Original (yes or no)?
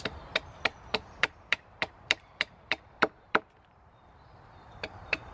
no